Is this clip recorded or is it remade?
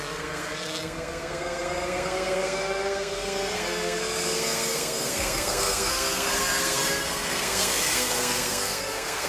remade